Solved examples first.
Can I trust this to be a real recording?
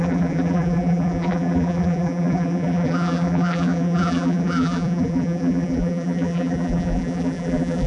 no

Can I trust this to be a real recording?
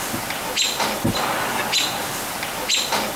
yes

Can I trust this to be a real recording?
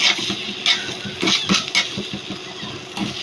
yes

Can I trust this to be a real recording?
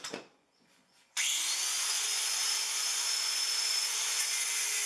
no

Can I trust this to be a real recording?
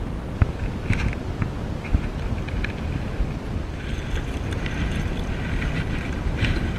yes